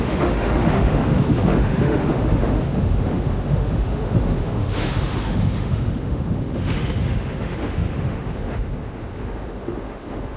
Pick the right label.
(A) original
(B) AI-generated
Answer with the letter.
B